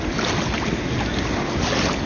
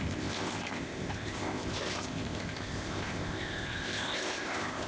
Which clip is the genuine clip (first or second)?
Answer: first